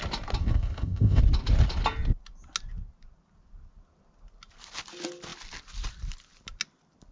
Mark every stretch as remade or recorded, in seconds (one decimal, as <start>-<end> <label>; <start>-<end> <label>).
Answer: 0.0-0.4 recorded; 0.4-1.2 remade; 1.2-7.1 recorded